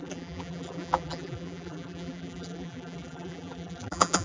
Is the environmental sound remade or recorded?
remade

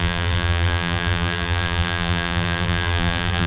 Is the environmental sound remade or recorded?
remade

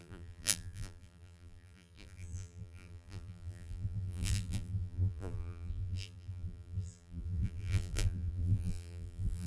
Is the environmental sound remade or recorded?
remade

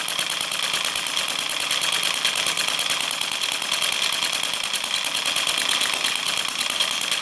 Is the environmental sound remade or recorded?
recorded